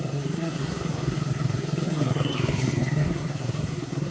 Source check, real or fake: fake